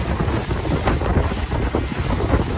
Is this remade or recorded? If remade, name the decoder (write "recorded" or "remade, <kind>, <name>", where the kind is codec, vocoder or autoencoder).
recorded